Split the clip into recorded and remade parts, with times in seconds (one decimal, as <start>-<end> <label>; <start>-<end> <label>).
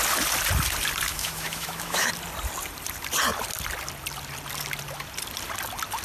0.0-1.1 recorded; 1.1-2.1 remade; 2.1-6.0 recorded